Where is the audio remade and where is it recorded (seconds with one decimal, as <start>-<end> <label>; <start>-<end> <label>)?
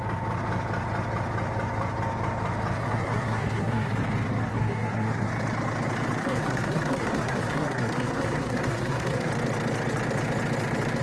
0.0-2.8 recorded; 2.8-3.9 remade; 3.9-4.5 recorded; 4.5-5.3 remade; 5.3-6.2 recorded; 6.2-9.3 remade; 9.3-11.0 recorded